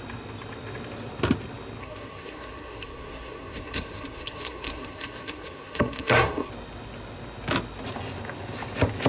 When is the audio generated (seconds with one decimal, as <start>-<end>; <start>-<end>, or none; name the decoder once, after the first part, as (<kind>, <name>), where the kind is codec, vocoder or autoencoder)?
1.8-6.5 (codec, SNAC)